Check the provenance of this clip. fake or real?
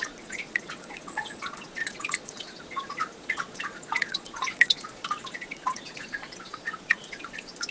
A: fake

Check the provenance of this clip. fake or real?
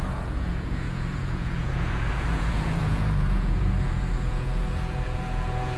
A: fake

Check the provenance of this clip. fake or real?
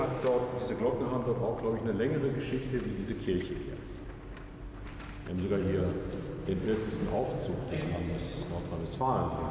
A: real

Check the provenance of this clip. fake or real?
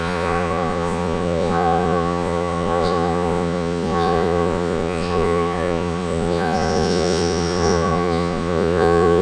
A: fake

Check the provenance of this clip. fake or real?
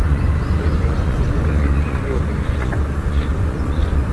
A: fake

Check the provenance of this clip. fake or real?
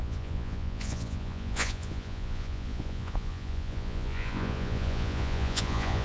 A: fake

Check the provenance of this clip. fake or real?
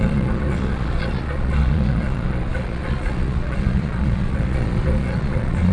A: fake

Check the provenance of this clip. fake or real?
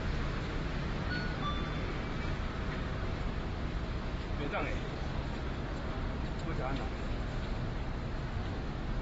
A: real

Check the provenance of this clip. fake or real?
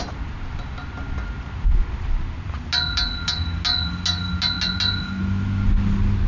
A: real